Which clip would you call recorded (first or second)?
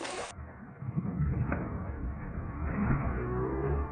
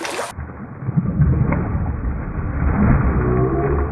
second